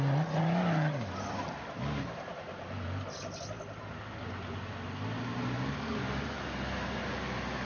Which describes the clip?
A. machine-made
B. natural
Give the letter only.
B